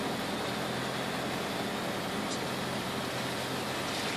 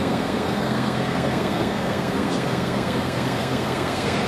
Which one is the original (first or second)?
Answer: first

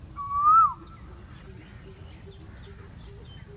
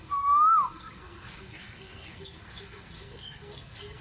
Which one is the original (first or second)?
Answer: first